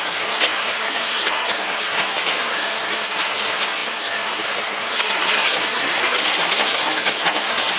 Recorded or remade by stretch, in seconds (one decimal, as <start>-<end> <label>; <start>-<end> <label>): 0.0-7.8 remade